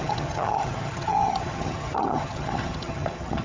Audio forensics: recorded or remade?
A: remade